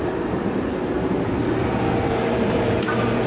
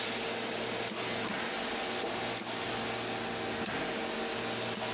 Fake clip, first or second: first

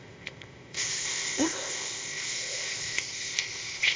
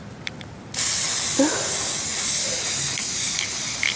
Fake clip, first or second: first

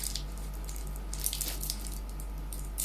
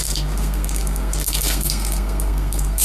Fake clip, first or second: second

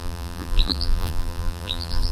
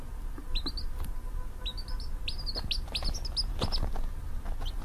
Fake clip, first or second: first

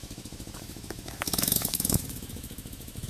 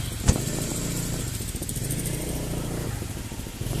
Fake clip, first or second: first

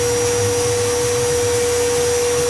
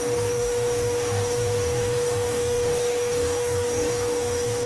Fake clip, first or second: second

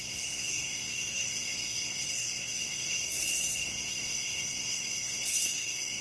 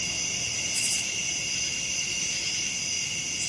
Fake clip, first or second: first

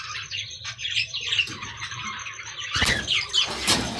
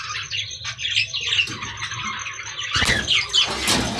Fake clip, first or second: first